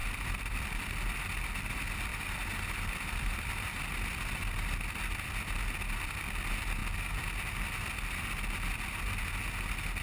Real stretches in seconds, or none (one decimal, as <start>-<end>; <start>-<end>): 1.3-2.1; 3.8-10.0